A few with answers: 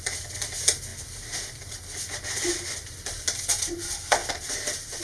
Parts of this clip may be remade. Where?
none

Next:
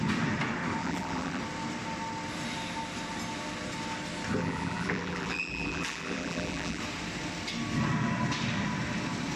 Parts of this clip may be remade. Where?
0.8-1.4 (vocoder, BigVGAN v2); 4.4-6.8

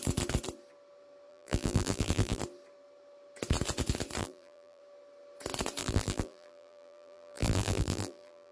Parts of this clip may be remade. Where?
1.3-2.4 (vocoder, BigVGAN v2); 4.2-4.8; 5.8-8.5

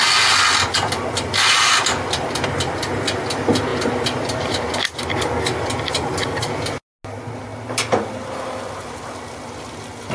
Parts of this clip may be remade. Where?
none